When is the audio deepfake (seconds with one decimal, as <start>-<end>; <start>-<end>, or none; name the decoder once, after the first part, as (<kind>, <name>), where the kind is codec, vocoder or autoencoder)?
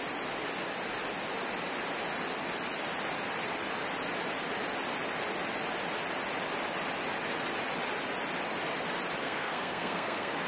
9.2-10.5 (codec, SNAC)